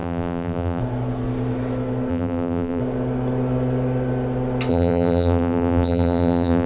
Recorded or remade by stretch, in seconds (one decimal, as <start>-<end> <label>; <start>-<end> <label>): 0.0-0.8 remade; 0.8-2.1 recorded; 2.1-2.8 remade; 2.8-4.7 recorded; 4.7-6.7 remade